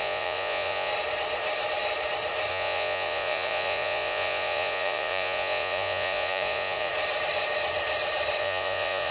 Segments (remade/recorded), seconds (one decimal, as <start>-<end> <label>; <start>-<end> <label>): 0.0-0.9 remade; 0.9-2.5 recorded; 2.5-6.9 remade; 6.9-8.4 recorded; 8.4-9.1 remade